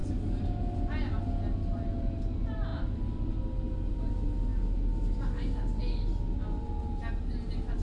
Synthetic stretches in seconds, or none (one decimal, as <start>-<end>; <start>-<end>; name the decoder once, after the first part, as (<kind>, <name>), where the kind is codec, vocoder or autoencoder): none